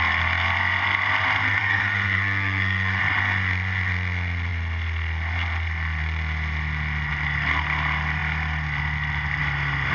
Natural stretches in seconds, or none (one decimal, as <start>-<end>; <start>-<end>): 0.0-1.6; 3.0-9.9